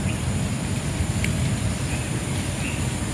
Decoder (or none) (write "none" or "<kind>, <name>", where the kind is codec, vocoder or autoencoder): vocoder, BigVGAN v2